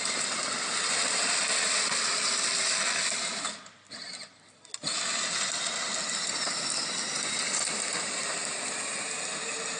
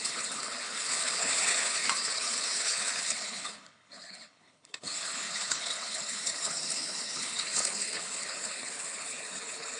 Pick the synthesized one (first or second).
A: second